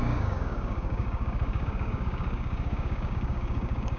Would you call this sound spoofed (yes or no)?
yes